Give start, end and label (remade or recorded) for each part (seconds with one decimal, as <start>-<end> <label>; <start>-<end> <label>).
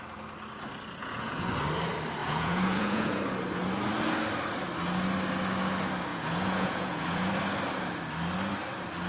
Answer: 0.0-1.0 recorded; 1.0-1.5 remade; 1.5-2.2 recorded; 2.2-3.2 remade; 3.2-6.1 recorded; 6.1-7.3 remade; 7.3-9.1 recorded